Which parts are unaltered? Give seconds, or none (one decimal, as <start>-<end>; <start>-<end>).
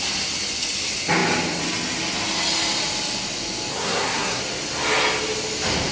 0.0-3.7; 4.4-5.9